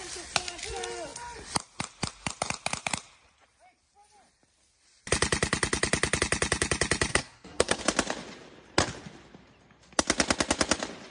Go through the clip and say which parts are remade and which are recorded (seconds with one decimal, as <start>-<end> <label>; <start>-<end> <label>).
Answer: 0.0-7.1 recorded; 7.1-7.8 remade; 7.8-11.1 recorded